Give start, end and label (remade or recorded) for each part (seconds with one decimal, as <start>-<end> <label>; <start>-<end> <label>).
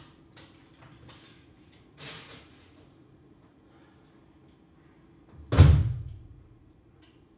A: 0.0-1.3 recorded; 1.3-3.7 remade; 3.7-5.8 recorded; 5.8-7.4 remade